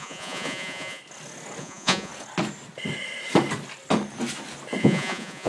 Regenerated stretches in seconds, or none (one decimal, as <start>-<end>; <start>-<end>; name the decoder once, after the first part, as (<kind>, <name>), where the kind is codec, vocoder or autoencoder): 0.0-1.0 (vocoder, Vocos); 1.6-2.1; 4.8-5.5